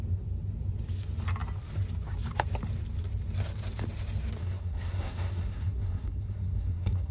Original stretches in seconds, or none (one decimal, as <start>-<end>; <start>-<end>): 0.0-4.4